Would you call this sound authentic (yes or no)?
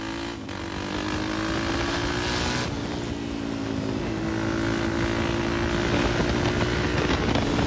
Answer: yes